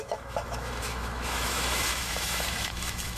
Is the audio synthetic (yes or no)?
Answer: yes